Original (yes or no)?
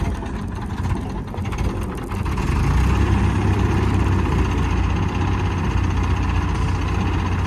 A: yes